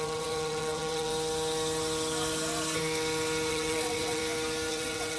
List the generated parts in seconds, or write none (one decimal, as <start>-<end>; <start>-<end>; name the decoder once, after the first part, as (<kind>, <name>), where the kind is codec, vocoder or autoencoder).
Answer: 0.0-1.1 (vocoder, WaveNeXt); 3.5-4.2; 4.7-5.2